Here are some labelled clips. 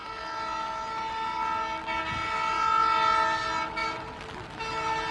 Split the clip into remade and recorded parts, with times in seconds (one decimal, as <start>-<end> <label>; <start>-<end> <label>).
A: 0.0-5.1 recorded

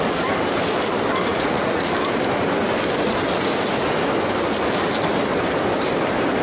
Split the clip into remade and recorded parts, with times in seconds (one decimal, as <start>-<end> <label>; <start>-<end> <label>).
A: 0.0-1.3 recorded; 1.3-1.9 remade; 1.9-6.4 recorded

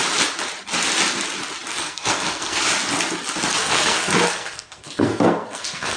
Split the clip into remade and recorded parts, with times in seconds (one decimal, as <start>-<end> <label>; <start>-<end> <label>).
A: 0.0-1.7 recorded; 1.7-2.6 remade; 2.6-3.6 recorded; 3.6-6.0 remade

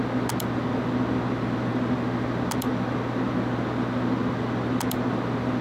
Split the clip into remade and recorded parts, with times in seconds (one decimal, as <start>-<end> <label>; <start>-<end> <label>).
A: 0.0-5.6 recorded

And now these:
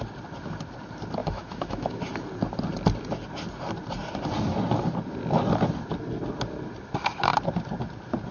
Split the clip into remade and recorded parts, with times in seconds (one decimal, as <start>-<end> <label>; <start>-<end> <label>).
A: 0.0-1.2 recorded; 1.2-2.0 remade; 2.0-8.3 recorded

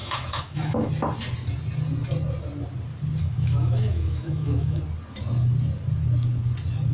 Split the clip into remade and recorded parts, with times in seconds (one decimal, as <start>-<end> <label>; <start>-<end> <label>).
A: 0.0-0.9 remade; 0.9-3.2 recorded; 3.2-4.8 remade; 4.8-6.9 recorded